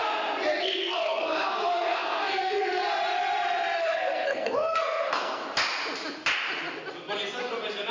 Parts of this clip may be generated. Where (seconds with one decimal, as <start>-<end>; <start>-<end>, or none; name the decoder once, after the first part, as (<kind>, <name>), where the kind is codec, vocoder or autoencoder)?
0.6-2.8 (codec, SNAC); 3.8-5.4